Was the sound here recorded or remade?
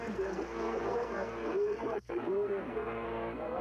remade